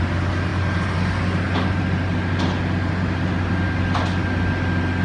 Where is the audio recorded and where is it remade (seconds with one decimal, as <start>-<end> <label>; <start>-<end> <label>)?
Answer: 0.0-5.0 recorded